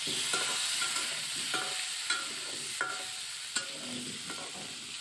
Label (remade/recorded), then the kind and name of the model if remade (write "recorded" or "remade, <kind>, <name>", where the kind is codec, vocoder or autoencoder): recorded